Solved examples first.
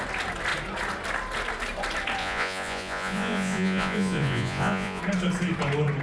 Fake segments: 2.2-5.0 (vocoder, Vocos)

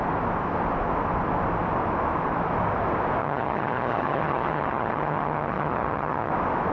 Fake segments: 3.2-6.3 (vocoder, HiFi-GAN)

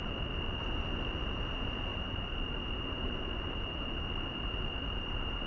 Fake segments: 0.0-5.5 (vocoder, BigVGAN v2)

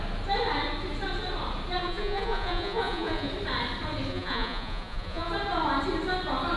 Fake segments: 1.8-3.3 (vocoder, Vocos); 4.1-5.3

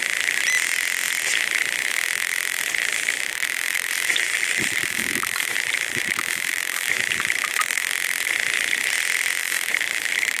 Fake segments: 2.9-7.9 (vocoder, BigVGAN v2); 9.4-10.4

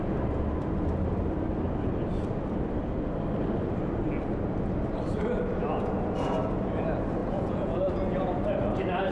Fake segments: 7.2-7.9 (vocoder, Vocos)

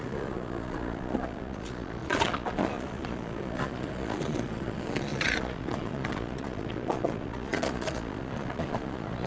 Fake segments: 0.0-9.3 (vocoder, Vocos)